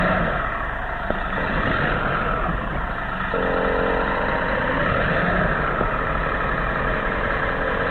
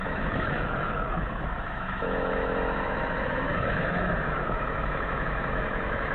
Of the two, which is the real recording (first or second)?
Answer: first